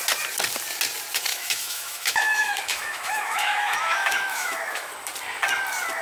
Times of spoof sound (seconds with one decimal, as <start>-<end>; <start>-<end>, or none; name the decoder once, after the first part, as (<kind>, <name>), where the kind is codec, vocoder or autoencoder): 1.3-4.9 (autoencoder, DAC-VAE)

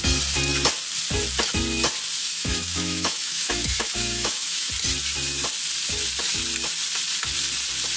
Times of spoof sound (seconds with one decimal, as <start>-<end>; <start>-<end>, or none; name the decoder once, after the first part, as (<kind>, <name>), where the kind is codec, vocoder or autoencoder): 2.2-4.7 (autoencoder, DAC-VAE)

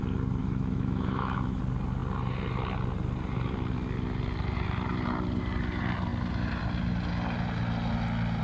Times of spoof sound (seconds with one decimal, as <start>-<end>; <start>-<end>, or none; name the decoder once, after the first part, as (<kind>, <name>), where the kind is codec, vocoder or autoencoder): 0.4-1.6 (autoencoder, DAC-VAE)

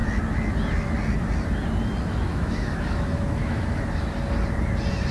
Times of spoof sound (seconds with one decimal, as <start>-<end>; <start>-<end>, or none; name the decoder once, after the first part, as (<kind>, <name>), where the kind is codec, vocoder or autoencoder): 2.3-3.8 (autoencoder, DAC-VAE)

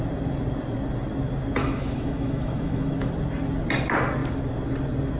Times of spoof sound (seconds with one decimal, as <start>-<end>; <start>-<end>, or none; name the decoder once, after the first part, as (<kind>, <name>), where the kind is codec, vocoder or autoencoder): 1.6-3.1 (autoencoder, DAC-VAE)

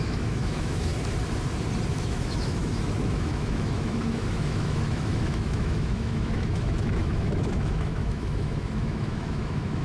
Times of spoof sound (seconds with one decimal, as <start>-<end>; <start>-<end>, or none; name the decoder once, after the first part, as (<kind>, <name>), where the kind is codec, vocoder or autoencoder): 0.0-0.9 (autoencoder, DAC-VAE); 1.9-9.8

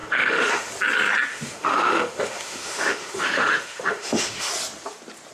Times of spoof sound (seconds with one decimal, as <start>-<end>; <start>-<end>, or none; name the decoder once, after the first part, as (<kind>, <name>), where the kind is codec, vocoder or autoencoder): 0.0-0.7 (autoencoder, DAC-VAE); 1.3-4.5

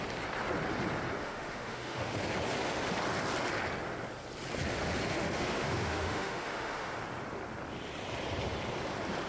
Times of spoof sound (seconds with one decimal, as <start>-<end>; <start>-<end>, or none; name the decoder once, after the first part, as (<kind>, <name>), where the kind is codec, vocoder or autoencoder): 1.2-2.2 (autoencoder, DAC-VAE); 5.1-7.0